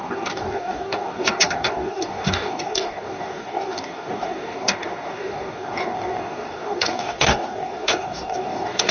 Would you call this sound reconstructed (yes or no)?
yes